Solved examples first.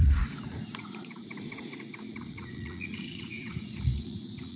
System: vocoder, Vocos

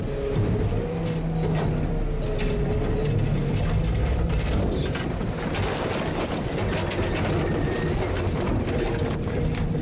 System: none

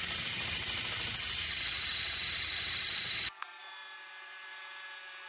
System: none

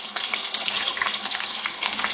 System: codec, SNAC